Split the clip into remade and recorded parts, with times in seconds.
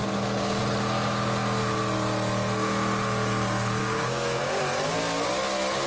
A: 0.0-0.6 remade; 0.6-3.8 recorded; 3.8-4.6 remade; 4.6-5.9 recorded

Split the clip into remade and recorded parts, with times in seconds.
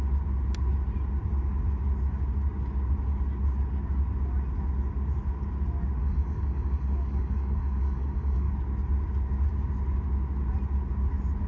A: 0.0-6.0 recorded; 6.0-8.5 remade; 8.5-11.5 recorded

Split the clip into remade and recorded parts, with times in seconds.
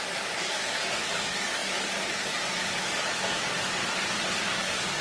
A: 0.0-3.8 remade; 3.8-4.4 recorded; 4.4-5.0 remade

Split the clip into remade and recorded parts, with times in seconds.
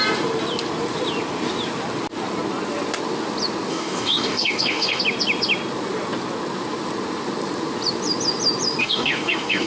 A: 0.0-3.7 recorded; 3.7-5.0 remade; 5.0-8.8 recorded; 8.8-9.7 remade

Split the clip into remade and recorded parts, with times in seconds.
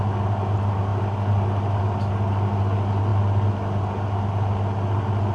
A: 0.0-5.3 recorded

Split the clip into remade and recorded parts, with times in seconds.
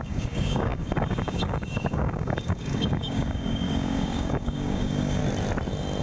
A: 0.0-5.2 remade; 5.2-6.0 recorded